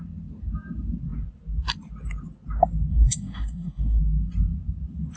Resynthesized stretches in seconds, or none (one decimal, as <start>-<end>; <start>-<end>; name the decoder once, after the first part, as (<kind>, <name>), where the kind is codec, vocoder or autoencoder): 2.9-4.0 (codec, SNAC)